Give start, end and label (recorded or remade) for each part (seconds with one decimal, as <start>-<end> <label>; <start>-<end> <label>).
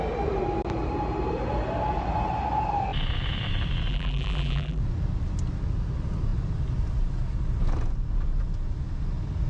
0.0-3.9 recorded; 3.9-4.8 remade; 4.8-9.5 recorded